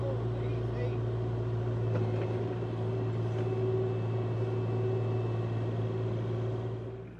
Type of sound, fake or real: real